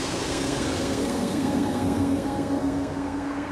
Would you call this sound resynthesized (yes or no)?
yes